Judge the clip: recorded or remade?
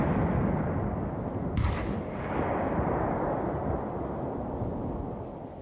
recorded